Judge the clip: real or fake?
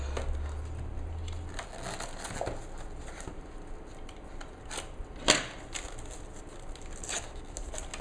real